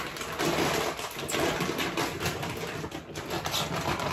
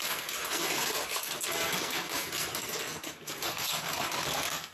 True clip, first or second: first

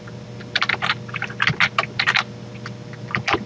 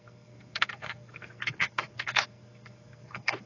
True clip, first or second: first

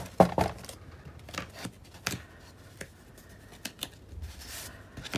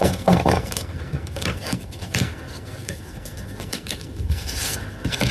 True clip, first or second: first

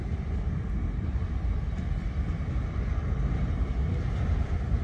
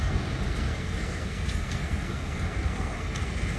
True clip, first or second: first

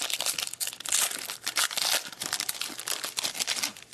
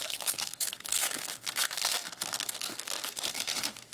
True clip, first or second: first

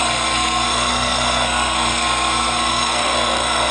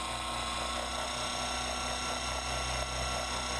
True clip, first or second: second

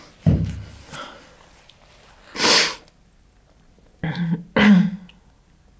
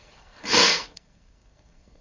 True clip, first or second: first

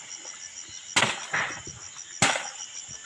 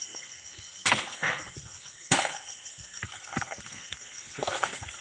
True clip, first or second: first